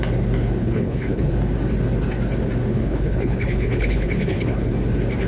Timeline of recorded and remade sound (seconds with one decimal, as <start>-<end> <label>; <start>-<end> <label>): 0.0-0.6 recorded; 0.6-1.3 remade; 1.3-2.7 recorded; 2.7-4.7 remade; 4.7-5.3 recorded